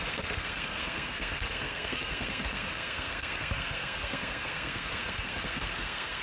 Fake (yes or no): yes